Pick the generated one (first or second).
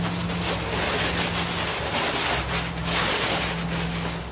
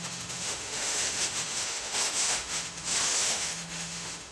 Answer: second